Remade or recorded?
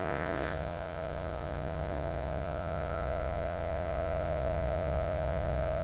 remade